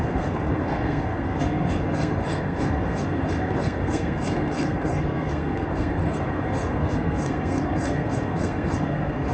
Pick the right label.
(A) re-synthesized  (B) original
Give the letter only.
A